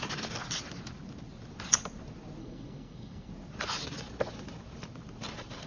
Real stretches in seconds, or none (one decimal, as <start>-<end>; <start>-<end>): 0.0-2.4; 3.3-5.7